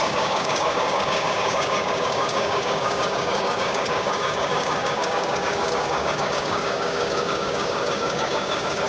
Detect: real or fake fake